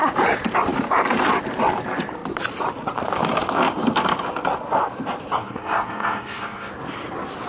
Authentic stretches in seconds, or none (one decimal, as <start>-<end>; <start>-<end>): 0.0-5.4; 6.7-7.5